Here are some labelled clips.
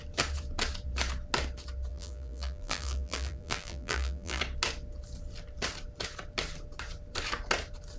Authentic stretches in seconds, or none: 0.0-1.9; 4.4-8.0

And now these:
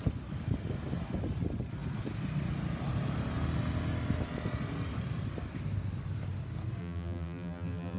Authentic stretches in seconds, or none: 0.0-6.8

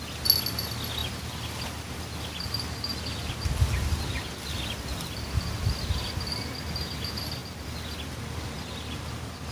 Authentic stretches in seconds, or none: 0.0-1.0; 2.5-9.5